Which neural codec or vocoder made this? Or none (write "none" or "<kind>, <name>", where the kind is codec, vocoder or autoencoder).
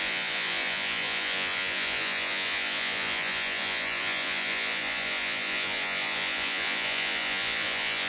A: vocoder, Vocos